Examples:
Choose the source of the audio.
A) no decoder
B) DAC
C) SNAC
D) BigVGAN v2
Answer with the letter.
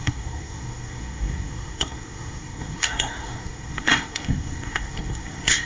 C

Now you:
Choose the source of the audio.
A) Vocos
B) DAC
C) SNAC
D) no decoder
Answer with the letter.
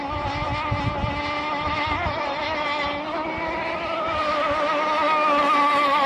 D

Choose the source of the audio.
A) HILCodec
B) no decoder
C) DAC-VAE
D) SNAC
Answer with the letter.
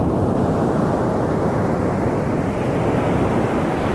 B